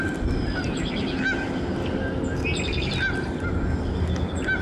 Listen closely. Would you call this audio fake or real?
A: real